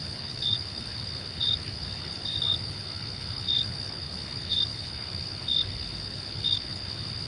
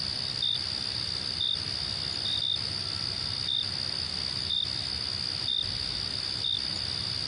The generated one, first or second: first